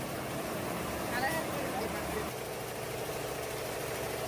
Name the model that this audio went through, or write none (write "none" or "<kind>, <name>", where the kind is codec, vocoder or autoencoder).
none